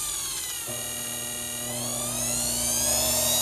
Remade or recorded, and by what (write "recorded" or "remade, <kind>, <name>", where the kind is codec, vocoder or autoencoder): recorded